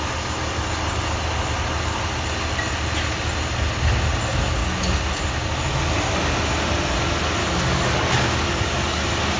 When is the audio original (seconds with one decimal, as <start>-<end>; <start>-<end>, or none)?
0.0-7.4; 9.0-9.4